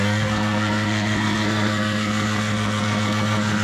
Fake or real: fake